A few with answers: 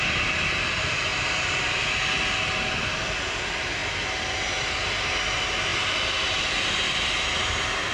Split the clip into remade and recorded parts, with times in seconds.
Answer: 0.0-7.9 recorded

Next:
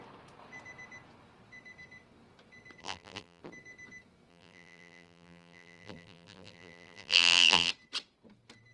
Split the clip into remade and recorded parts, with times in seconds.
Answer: 0.0-2.8 recorded; 2.8-3.4 remade; 3.4-4.3 recorded; 4.3-7.7 remade; 7.7-8.7 recorded

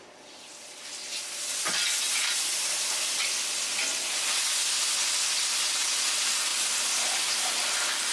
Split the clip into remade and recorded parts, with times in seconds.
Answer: 0.0-8.1 recorded